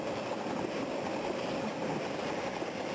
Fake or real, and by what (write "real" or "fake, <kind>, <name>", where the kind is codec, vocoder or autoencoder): real